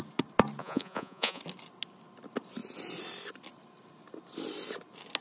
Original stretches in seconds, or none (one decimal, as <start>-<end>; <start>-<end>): 0.0-0.6; 1.4-5.2